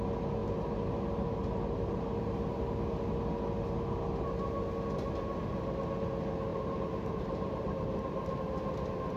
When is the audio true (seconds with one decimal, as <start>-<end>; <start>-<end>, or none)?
0.0-0.4; 2.6-6.5; 8.4-9.2